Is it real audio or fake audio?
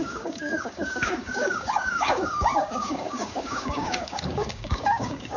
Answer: fake